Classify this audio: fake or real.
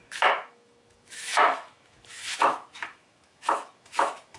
fake